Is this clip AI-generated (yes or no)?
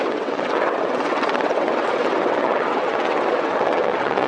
yes